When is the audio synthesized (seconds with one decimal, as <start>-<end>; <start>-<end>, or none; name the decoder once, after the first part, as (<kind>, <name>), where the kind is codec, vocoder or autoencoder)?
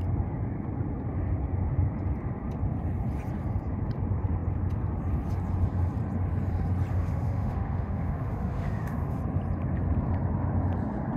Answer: 6.9-9.2 (autoencoder, DAC-VAE)